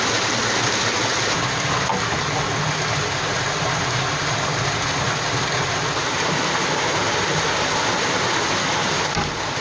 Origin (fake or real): real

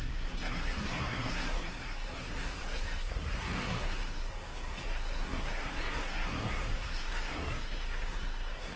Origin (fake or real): fake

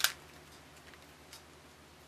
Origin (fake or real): real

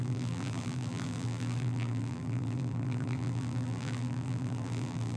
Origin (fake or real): fake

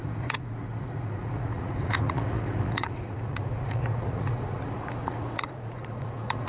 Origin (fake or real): fake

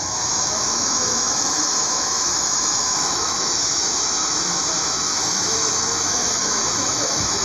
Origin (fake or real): fake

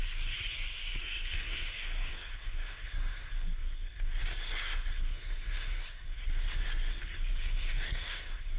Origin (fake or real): fake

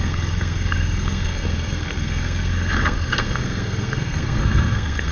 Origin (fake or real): fake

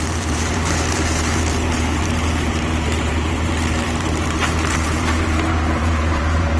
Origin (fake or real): fake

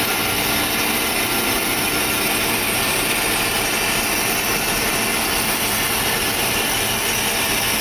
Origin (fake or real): real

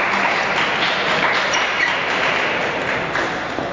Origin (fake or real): fake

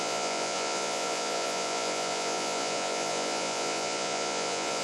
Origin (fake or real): fake